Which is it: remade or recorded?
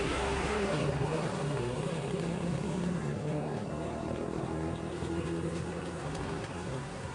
remade